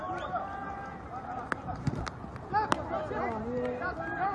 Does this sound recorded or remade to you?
recorded